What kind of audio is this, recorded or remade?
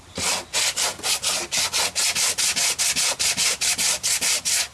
recorded